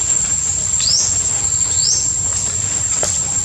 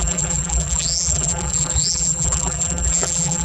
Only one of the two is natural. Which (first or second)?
first